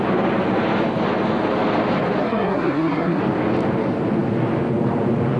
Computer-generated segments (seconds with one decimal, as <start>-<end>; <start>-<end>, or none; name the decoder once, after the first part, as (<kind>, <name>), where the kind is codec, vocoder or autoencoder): 2.2-3.2 (codec, SNAC)